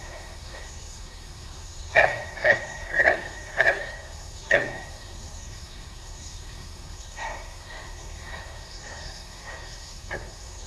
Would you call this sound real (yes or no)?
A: no